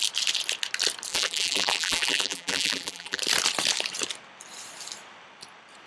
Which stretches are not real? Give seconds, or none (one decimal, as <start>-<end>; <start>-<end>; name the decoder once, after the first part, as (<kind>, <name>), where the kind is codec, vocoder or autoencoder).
1.1-3.2 (vocoder, BigVGAN v2)